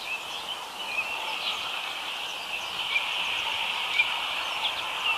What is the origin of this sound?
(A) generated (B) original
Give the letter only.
B